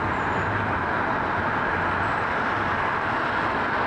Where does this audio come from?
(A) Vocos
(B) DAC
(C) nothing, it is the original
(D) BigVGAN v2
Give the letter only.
C